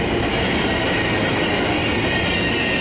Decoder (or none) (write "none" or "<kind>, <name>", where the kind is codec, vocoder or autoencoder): none